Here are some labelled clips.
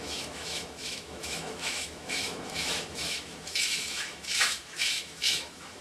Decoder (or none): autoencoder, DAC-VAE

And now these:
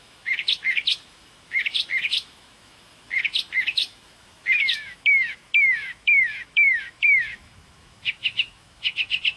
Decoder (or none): autoencoder, DAC-VAE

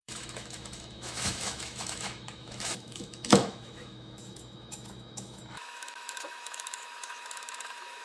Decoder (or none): autoencoder, DAC-VAE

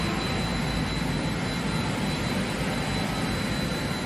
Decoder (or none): none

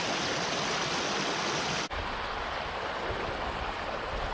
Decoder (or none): none